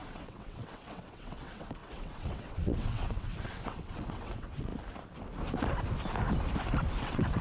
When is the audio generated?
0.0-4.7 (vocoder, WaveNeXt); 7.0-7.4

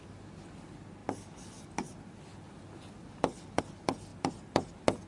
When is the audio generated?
none

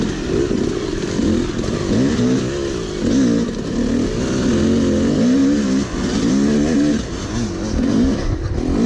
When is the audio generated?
none